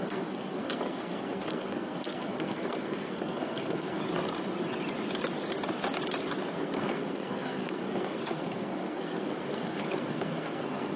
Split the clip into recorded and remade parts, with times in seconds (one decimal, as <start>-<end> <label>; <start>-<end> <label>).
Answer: 0.0-4.0 remade; 4.0-6.5 recorded; 6.5-11.0 remade